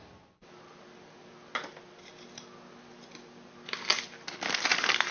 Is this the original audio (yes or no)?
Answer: yes